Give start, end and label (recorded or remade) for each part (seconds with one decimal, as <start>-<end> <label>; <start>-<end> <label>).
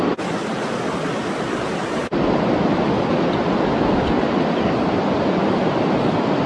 0.0-6.5 recorded